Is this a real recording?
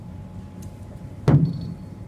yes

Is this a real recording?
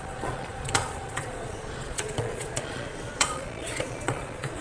no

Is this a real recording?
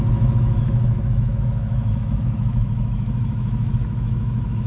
no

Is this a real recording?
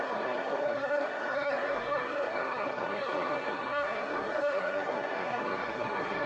no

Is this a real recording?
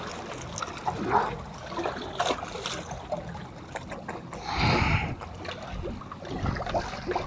yes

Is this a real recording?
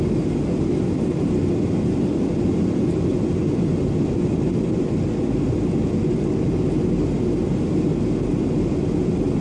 yes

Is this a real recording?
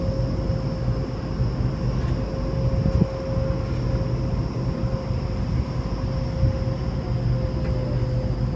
yes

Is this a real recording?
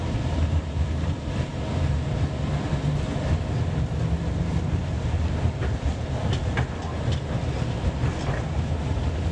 yes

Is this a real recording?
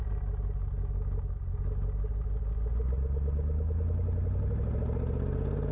yes